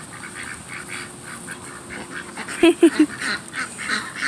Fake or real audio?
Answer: real